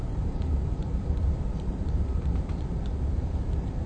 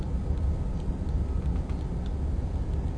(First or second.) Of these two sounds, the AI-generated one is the first